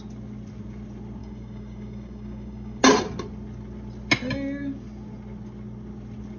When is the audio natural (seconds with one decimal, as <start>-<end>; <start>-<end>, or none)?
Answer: 0.0-1.2; 2.8-6.4